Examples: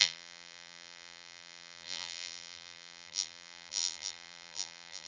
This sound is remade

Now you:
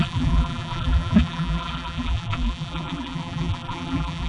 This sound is remade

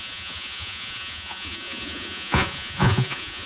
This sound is remade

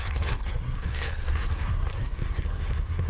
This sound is remade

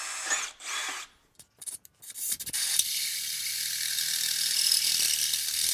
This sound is recorded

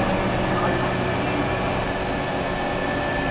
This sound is recorded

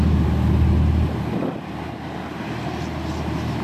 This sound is recorded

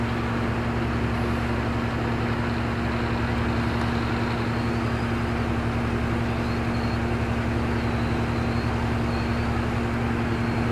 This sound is recorded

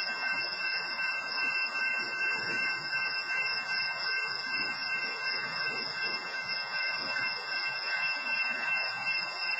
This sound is remade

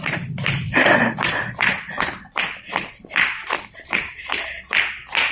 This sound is remade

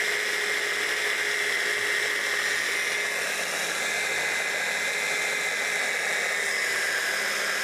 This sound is recorded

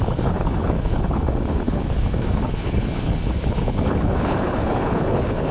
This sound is remade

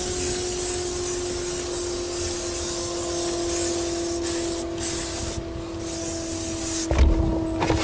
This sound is recorded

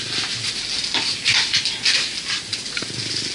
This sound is recorded